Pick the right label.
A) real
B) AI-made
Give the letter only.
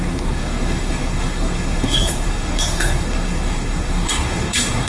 B